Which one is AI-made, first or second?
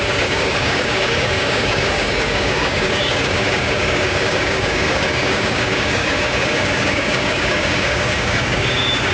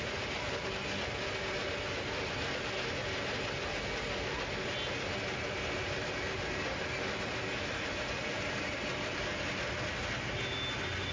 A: first